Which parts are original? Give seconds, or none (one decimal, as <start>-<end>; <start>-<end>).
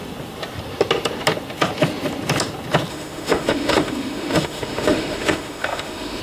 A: 0.0-2.9